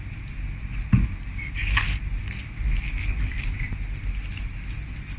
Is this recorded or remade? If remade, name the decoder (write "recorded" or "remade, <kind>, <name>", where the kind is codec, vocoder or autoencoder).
recorded